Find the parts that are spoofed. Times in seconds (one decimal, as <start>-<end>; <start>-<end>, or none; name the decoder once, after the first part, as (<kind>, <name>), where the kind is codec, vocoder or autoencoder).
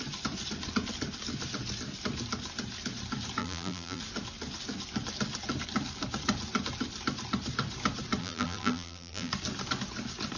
3.4-4.0 (vocoder, BigVGAN v2); 8.2-9.3